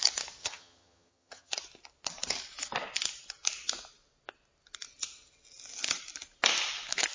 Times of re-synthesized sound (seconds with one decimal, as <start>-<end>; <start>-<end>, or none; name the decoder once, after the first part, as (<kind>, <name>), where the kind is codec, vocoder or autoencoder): 0.4-1.5 (vocoder, HiFi-GAN)